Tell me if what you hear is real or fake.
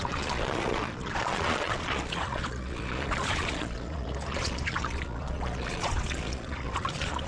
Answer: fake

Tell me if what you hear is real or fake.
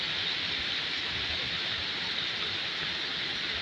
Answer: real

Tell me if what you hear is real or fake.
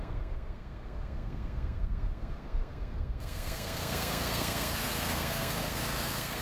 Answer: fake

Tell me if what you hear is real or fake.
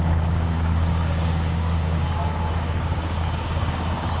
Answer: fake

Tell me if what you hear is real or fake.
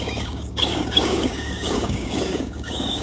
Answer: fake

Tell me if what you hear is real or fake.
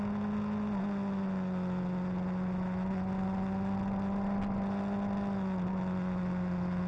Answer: real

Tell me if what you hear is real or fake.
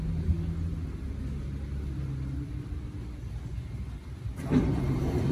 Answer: real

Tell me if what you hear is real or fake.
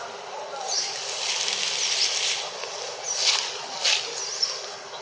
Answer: real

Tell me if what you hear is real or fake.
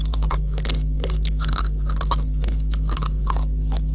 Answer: fake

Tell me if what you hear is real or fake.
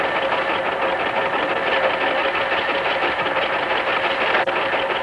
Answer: real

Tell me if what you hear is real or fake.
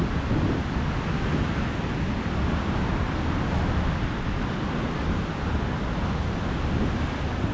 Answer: real